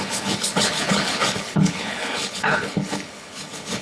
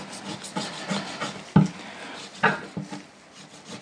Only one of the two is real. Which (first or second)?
second